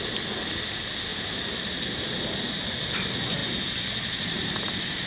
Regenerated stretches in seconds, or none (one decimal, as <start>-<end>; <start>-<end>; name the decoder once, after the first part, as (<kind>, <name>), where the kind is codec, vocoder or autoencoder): none